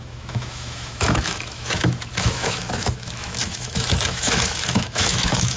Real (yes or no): no